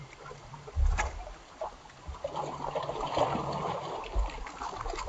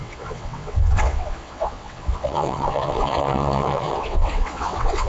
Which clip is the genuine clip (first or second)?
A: first